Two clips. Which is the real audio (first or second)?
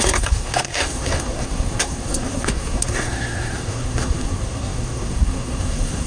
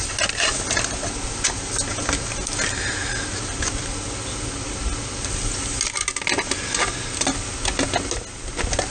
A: second